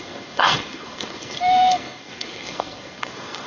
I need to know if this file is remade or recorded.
remade